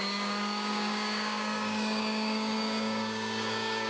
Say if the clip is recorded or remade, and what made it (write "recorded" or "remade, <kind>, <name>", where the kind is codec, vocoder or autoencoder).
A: remade, codec, DAC